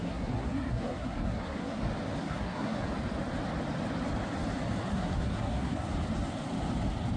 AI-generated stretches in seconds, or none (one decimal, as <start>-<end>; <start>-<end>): 0.0-1.8; 2.2-2.8; 4.9-5.9